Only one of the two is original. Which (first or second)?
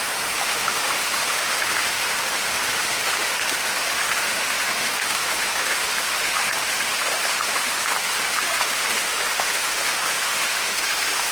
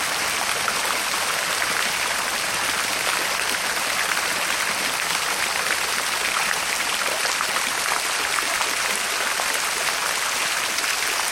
second